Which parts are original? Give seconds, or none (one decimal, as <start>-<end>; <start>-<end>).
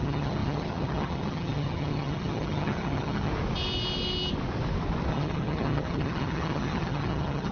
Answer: 3.3-5.1